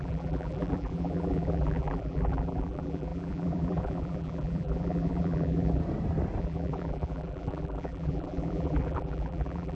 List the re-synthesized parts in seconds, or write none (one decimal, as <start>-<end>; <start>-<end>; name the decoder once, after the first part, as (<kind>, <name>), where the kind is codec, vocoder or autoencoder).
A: 0.0-5.8 (vocoder, BigVGAN v2); 6.4-9.8

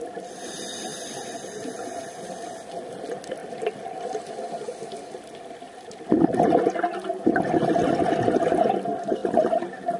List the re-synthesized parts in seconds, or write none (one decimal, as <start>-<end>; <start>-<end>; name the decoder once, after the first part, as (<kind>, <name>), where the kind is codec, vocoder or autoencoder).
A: 3.4-4.7 (vocoder, BigVGAN v2)

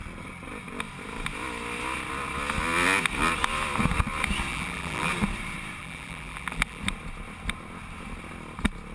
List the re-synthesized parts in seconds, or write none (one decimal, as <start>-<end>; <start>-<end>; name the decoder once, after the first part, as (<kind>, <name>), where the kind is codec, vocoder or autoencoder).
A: 4.5-5.1 (vocoder, BigVGAN v2); 5.8-6.8